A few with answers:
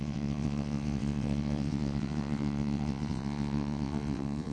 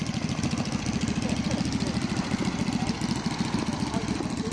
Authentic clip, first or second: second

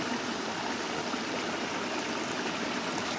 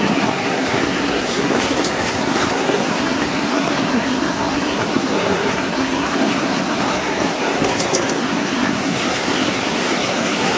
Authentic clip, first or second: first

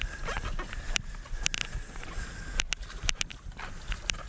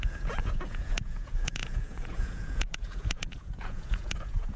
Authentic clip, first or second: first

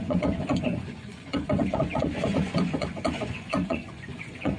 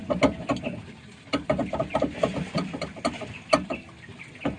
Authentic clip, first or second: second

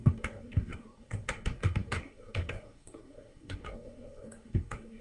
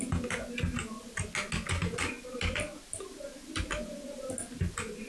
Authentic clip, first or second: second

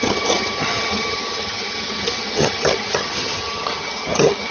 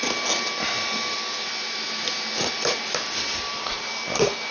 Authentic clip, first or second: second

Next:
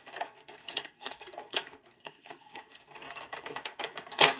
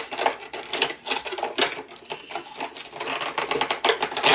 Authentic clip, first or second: second